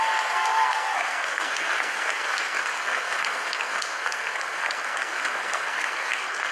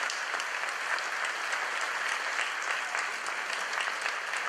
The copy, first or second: first